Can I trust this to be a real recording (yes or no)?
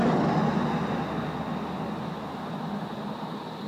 yes